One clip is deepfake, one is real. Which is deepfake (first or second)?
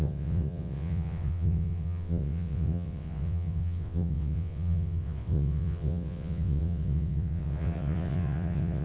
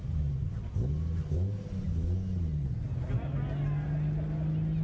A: first